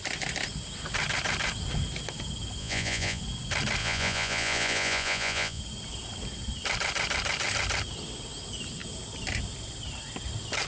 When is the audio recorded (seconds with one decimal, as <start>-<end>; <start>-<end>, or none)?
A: 0.0-2.6; 3.2-3.8; 5.6-10.7